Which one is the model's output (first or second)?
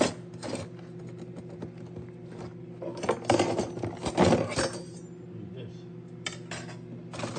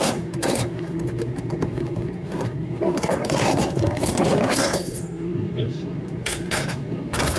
second